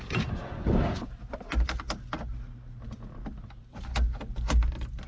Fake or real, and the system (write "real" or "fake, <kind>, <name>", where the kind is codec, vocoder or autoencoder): real